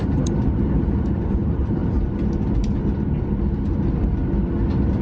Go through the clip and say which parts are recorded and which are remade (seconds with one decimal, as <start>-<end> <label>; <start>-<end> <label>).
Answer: 0.0-1.8 remade; 1.8-5.0 recorded